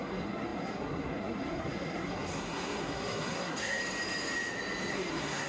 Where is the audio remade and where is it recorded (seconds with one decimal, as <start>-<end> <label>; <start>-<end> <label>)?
0.0-3.8 remade; 3.8-4.9 recorded; 4.9-5.5 remade